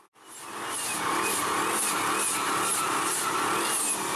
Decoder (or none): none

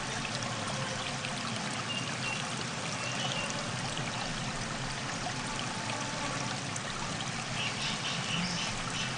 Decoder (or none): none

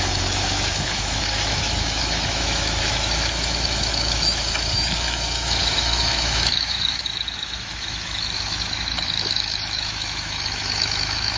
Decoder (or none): autoencoder, DAC-VAE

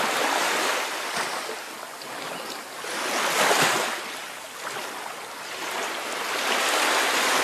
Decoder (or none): none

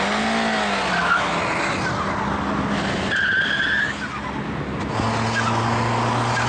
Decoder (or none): none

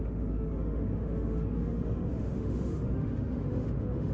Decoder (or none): autoencoder, DAC-VAE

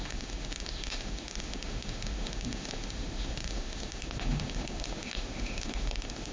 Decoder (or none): autoencoder, DAC-VAE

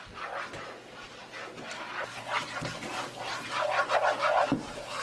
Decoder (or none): none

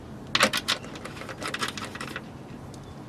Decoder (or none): none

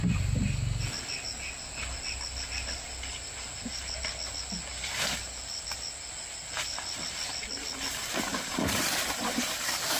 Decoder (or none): none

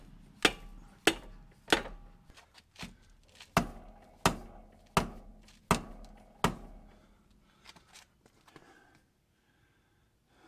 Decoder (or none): none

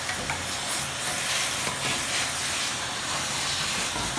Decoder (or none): none